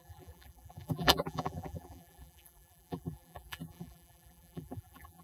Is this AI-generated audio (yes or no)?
yes